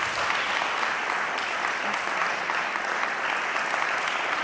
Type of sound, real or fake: real